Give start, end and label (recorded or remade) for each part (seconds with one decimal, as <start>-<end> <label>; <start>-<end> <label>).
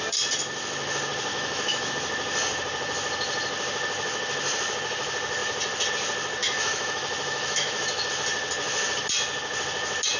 0.0-1.3 recorded; 1.3-1.9 remade; 1.9-6.4 recorded; 6.4-8.1 remade; 8.1-10.2 recorded